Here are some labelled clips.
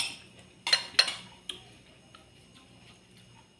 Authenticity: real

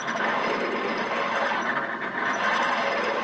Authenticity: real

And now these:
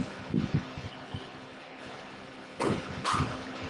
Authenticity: fake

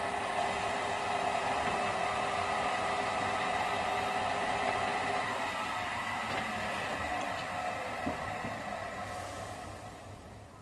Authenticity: real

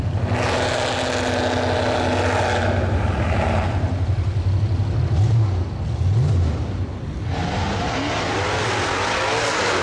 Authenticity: real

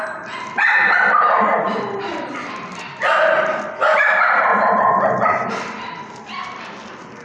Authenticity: real